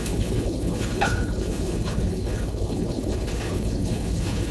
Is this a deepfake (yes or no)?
yes